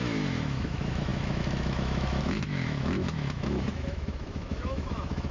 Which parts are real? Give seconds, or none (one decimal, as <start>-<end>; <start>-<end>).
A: none